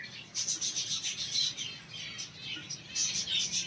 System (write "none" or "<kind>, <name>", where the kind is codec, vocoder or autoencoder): none